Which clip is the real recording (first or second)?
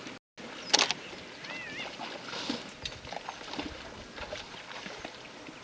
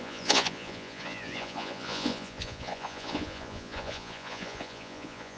first